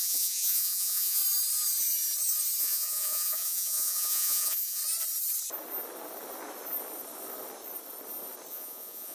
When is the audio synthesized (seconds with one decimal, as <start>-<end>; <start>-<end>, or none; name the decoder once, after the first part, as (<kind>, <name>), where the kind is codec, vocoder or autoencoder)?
0.0-1.2 (vocoder, Vocos); 2.6-4.8; 8.5-9.1